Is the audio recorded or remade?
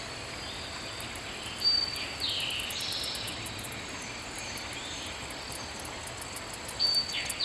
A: recorded